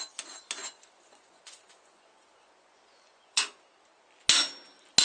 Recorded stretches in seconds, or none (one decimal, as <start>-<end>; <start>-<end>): 0.0-0.6; 3.6-5.0